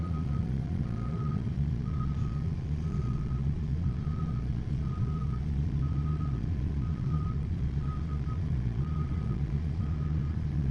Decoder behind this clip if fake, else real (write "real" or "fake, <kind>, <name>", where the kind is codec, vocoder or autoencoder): fake, vocoder, Vocos